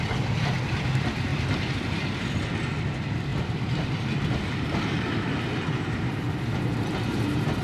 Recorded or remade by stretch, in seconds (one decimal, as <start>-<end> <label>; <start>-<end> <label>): 0.0-7.6 remade

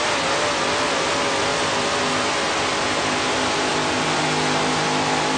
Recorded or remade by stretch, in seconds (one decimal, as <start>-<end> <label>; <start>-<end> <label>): 0.0-5.4 recorded

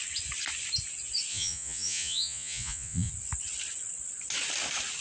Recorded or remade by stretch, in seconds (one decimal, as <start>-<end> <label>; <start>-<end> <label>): 0.0-1.3 recorded; 1.3-3.1 remade; 3.1-5.0 recorded

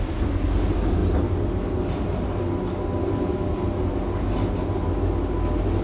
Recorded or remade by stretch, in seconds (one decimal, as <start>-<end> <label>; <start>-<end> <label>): 0.0-5.8 recorded

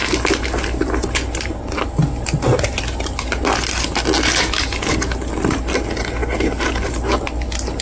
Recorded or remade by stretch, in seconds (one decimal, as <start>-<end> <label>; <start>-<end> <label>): 0.0-7.8 recorded

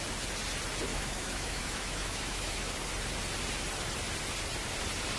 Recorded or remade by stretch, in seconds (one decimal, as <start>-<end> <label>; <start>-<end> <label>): 0.0-0.9 recorded; 0.9-2.7 remade; 2.7-5.2 recorded

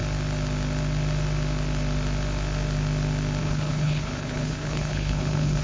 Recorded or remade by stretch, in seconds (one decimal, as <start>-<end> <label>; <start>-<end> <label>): 0.0-3.4 recorded; 3.4-5.6 remade

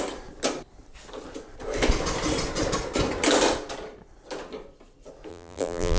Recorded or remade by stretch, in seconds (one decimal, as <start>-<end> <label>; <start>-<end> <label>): 0.0-5.3 recorded; 5.3-6.0 remade